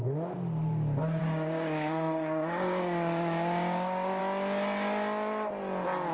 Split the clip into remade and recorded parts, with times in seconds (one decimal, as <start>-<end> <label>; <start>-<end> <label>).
0.0-1.2 recorded; 1.2-4.2 remade; 4.2-6.1 recorded